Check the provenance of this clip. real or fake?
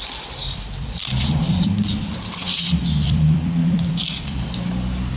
fake